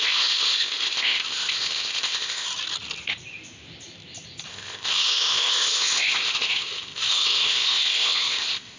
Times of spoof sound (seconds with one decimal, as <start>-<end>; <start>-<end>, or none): 0.0-2.5; 4.5-8.8

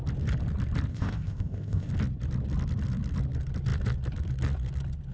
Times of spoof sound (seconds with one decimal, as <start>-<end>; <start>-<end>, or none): 0.9-1.9

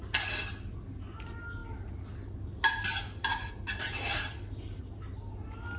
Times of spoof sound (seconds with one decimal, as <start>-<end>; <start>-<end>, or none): none

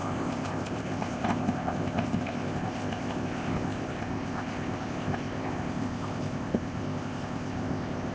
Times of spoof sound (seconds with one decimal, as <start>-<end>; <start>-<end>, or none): 0.0-8.1

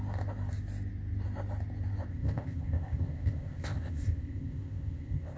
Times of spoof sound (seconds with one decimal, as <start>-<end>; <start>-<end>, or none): 2.1-5.4

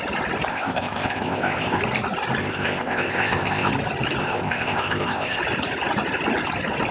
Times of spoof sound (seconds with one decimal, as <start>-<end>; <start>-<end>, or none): 0.5-1.8; 2.4-3.7; 4.2-5.4

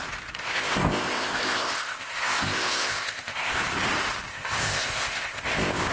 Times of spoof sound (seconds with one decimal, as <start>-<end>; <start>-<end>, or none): 0.4-3.6; 4.3-5.9

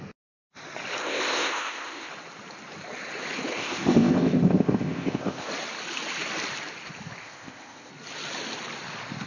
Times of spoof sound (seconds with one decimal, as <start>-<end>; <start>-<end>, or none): 1.0-2.1; 3.5-5.5; 7.2-7.9